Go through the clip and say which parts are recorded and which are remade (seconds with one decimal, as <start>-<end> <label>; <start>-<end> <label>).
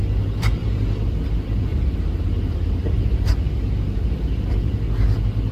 0.0-0.6 recorded; 0.6-1.1 remade; 1.1-1.7 recorded; 1.7-4.4 remade; 4.4-5.5 recorded